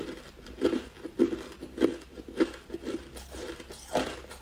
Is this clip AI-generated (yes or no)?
no